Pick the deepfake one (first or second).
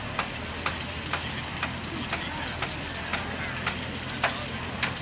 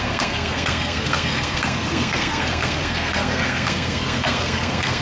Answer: second